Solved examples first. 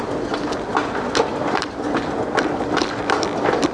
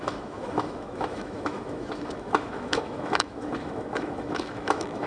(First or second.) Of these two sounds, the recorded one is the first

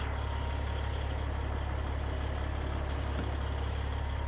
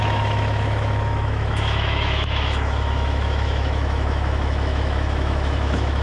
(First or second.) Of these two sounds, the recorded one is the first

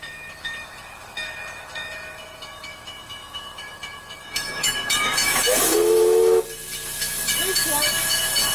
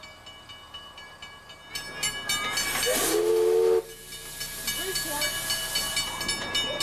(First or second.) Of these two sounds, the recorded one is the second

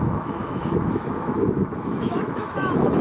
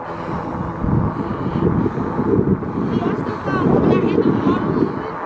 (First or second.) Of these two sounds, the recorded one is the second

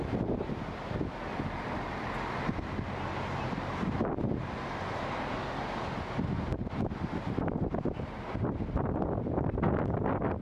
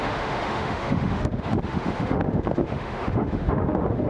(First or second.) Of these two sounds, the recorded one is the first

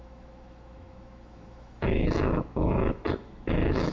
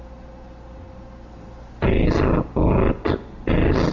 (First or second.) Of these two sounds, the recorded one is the second